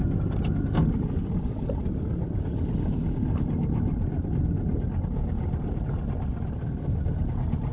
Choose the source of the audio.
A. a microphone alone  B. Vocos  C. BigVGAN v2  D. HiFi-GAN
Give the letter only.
A